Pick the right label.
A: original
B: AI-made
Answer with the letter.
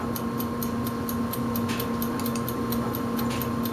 A